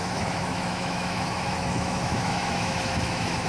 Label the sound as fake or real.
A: fake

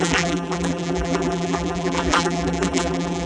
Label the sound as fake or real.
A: fake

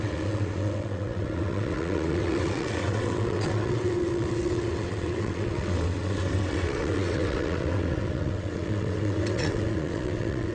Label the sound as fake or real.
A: fake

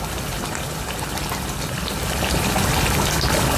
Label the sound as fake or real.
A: real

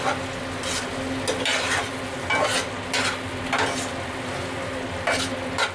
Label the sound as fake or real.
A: real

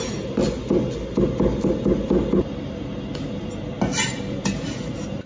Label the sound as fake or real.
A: real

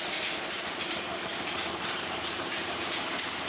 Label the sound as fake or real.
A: fake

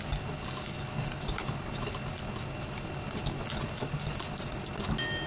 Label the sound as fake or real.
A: real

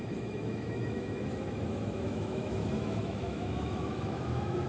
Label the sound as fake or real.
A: fake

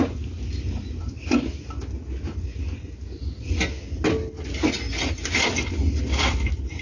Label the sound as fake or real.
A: real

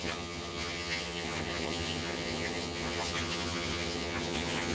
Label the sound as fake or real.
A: fake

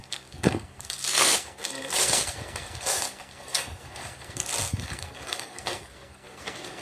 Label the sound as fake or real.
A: fake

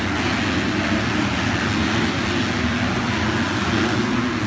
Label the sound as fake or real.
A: real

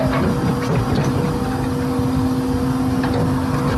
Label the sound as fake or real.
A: real